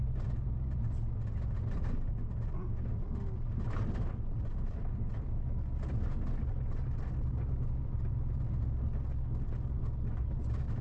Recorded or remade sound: recorded